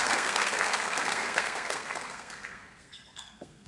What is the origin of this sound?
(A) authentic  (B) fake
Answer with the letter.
B